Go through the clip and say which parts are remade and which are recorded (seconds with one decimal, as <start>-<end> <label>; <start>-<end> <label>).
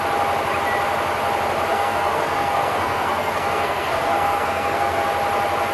0.0-1.7 recorded; 1.7-5.1 remade; 5.1-5.7 recorded